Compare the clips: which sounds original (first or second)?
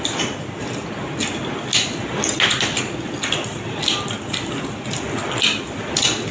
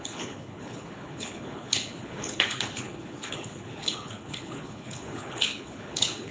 first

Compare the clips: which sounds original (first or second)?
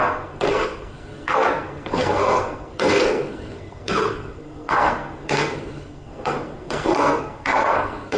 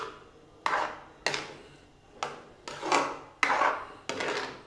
second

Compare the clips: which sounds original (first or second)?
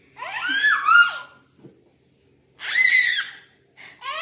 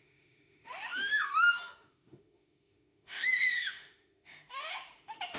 first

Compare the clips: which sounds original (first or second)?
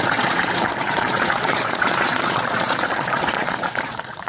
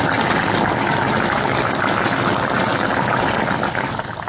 second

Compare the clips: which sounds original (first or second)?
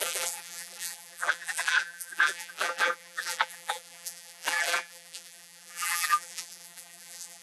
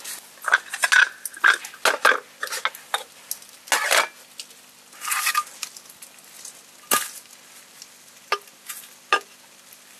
second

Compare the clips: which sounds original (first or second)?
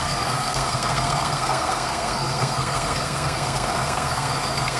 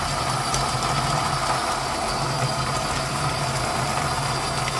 second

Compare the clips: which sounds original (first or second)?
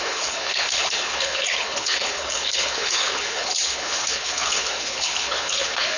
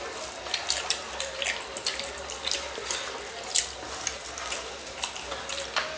second